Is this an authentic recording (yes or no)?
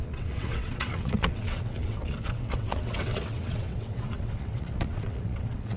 no